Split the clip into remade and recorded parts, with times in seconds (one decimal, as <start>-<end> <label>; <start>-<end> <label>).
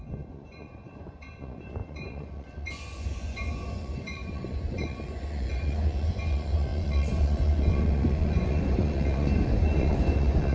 0.0-10.5 remade